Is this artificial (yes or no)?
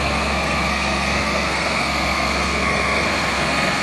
yes